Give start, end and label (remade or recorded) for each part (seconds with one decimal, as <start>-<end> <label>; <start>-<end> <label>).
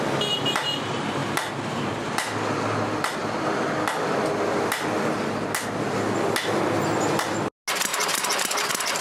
0.0-9.0 recorded